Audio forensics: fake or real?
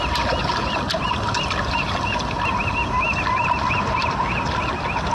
real